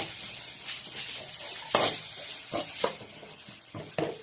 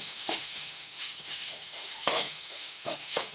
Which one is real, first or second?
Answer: first